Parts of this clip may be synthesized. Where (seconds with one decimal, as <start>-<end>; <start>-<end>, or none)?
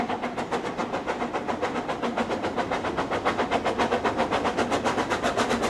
none